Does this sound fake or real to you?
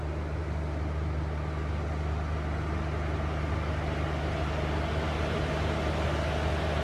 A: real